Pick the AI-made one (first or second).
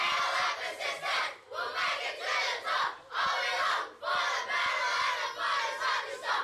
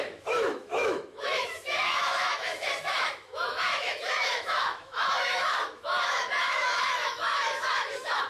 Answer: second